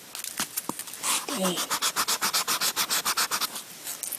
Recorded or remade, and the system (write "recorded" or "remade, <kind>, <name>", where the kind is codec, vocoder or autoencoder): recorded